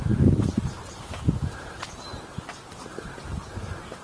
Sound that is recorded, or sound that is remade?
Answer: remade